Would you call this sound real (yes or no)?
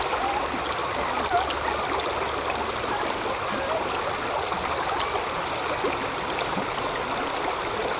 yes